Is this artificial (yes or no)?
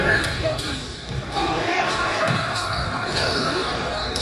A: yes